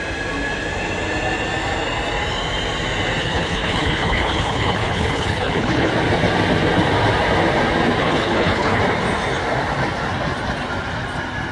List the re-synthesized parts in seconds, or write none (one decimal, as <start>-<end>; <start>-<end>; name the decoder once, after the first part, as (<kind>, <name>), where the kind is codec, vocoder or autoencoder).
3.2-5.9 (codec, HILCodec); 8.0-8.8